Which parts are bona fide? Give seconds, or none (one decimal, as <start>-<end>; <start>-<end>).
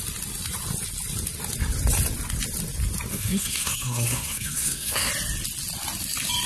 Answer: 0.0-3.1; 5.1-6.5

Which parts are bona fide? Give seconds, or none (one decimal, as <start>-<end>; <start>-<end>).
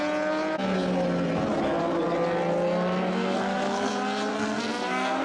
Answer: 0.0-3.1; 3.9-4.3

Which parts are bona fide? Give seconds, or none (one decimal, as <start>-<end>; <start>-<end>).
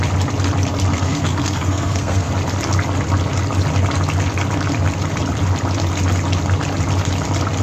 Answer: 0.0-0.9; 2.3-7.6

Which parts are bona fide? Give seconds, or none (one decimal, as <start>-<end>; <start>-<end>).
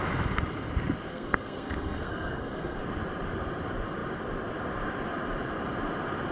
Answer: 0.0-1.1; 2.8-6.3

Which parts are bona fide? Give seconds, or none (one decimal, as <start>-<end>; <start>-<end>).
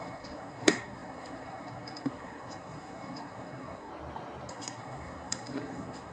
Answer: 3.9-4.5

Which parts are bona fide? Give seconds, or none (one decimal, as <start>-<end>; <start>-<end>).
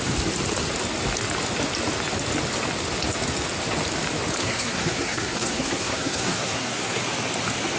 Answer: 0.0-4.4; 7.0-7.8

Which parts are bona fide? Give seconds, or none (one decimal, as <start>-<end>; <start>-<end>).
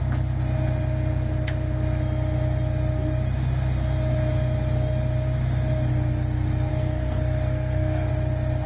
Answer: 0.0-6.7; 8.1-8.7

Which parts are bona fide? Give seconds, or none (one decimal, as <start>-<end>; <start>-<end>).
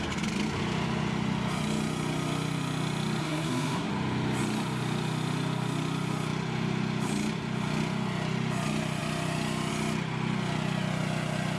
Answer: 0.0-3.2; 3.9-11.6